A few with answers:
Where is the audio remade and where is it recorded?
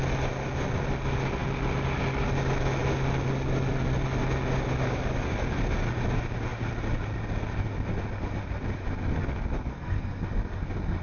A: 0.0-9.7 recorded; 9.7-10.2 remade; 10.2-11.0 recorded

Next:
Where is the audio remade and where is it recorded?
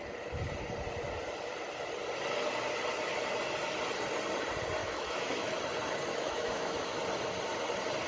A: 0.0-4.8 recorded; 4.8-5.6 remade; 5.6-6.1 recorded; 6.1-7.0 remade; 7.0-8.1 recorded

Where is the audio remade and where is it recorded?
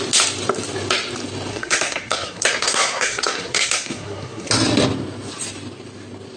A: 0.0-1.5 recorded; 1.5-4.5 remade; 4.5-6.4 recorded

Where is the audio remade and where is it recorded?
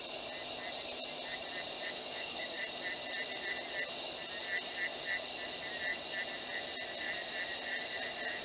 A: 0.0-2.0 recorded; 2.0-2.6 remade; 2.6-8.4 recorded